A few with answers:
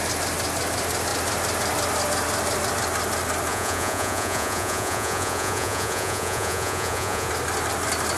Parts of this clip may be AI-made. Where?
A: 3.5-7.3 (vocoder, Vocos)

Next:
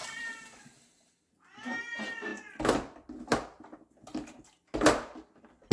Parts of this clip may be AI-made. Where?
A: none

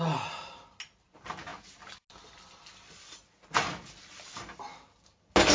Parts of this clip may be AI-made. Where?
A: none